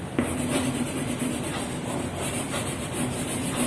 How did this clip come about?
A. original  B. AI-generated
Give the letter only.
A